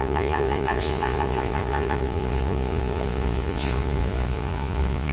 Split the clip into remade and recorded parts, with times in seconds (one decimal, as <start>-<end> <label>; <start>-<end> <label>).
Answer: 0.0-5.1 remade